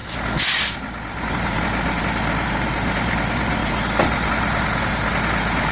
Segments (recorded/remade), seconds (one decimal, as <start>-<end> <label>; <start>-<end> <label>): 0.0-5.7 recorded